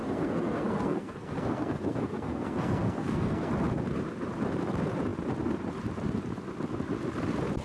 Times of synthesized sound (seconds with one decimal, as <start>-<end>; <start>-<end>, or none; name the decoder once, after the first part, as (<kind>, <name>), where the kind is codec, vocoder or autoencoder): 0.0-3.5 (codec, SNAC)